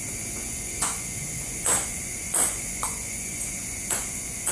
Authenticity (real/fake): fake